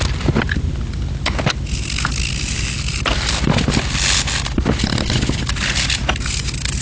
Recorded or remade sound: recorded